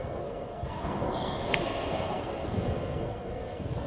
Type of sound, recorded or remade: remade